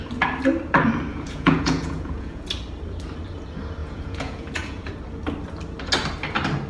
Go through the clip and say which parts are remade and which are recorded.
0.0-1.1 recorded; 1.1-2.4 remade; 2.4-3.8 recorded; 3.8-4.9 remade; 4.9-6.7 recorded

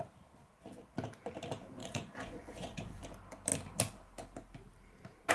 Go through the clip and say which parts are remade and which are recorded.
0.0-1.8 recorded; 1.8-3.0 remade; 3.0-5.3 recorded

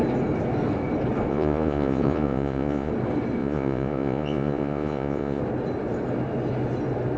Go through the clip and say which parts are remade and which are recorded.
0.0-1.3 recorded; 1.3-2.9 remade; 2.9-3.4 recorded; 3.4-5.4 remade; 5.4-7.2 recorded

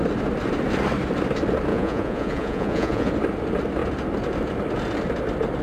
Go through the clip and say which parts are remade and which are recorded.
0.0-1.7 recorded; 1.7-3.1 remade; 3.1-5.6 recorded

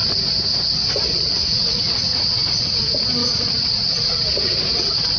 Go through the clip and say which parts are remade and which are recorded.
0.0-1.3 recorded; 1.3-2.3 remade; 2.3-3.2 recorded; 3.2-4.2 remade; 4.2-5.2 recorded